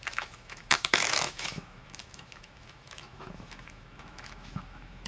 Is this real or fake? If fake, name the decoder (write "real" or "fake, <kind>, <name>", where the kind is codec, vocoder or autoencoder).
fake, autoencoder, DAC-VAE